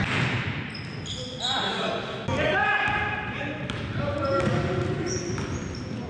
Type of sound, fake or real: real